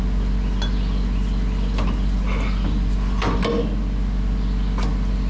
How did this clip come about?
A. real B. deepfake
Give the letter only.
A